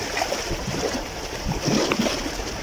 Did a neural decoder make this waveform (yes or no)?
yes